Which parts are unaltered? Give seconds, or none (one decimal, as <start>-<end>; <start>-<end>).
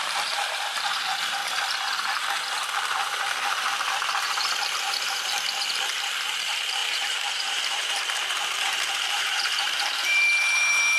1.4-2.8; 5.5-6.3